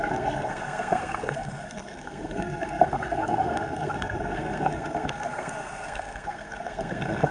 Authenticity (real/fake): fake